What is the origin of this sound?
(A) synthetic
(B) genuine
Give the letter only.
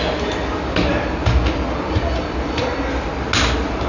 B